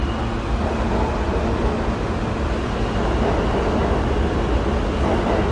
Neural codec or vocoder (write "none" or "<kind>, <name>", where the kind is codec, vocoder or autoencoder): none